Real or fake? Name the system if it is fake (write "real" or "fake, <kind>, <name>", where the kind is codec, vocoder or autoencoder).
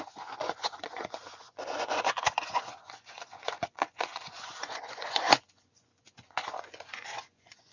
fake, vocoder, Vocos